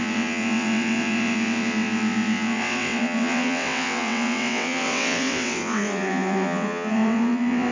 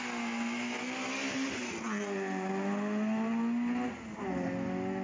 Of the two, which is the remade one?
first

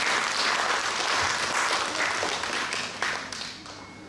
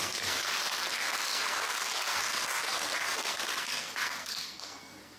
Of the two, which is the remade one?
second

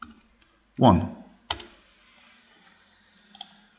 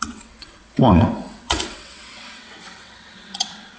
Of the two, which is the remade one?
second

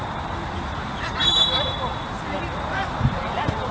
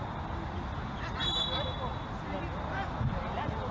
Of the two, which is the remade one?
first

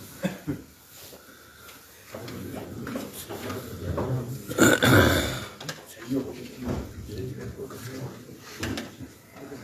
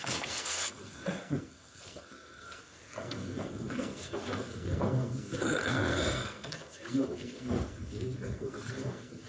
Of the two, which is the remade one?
second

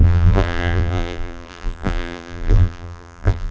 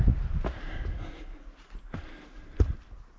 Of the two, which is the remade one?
first